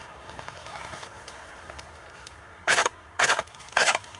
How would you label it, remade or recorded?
remade